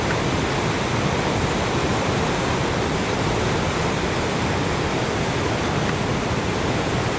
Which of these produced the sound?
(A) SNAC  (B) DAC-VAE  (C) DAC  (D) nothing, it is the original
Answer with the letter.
D